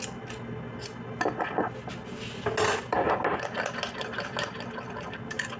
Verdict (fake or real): real